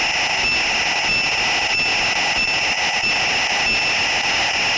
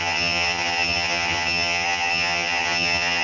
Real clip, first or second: first